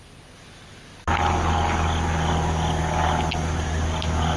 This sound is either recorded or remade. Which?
recorded